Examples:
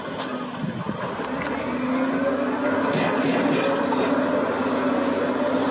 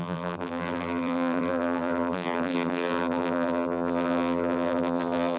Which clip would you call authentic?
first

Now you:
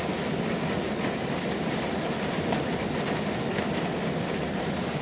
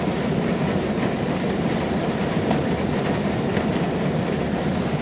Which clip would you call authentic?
first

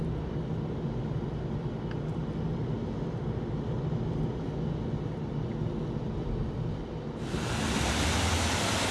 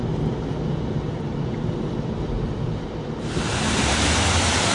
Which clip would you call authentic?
first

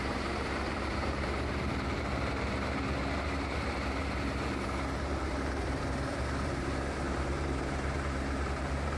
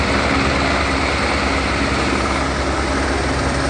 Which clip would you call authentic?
second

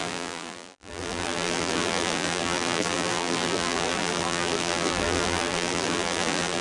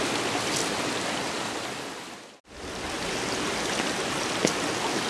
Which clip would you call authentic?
second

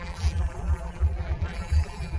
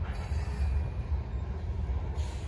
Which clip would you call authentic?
second